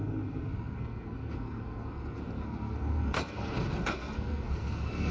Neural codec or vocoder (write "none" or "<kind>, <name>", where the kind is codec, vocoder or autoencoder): codec, SNAC